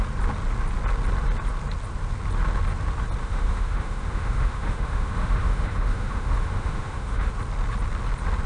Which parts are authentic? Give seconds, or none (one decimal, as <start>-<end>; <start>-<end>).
0.0-3.2; 7.3-8.5